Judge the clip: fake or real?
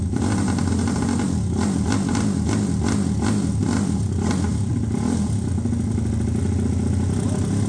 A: real